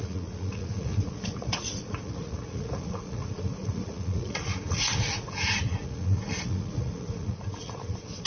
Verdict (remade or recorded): remade